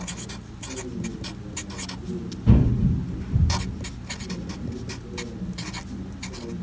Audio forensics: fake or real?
real